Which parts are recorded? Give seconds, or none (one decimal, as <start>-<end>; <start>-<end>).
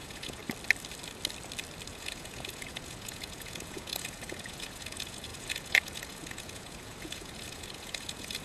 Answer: 0.4-1.9